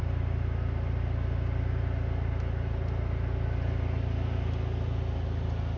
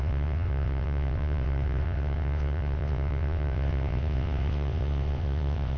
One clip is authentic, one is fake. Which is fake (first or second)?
second